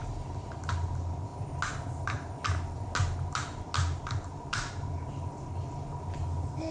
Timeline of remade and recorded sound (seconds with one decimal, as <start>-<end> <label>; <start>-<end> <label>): 0.0-6.7 recorded